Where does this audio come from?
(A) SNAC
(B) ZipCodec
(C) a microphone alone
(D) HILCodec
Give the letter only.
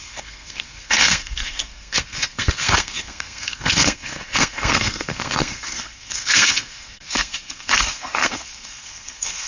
A